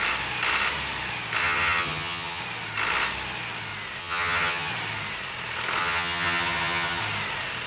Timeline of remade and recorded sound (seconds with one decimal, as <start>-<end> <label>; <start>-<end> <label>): 0.0-1.4 recorded; 1.4-2.4 remade; 2.4-4.0 recorded; 4.0-4.7 remade; 4.7-5.8 recorded; 5.8-7.0 remade; 7.0-7.7 recorded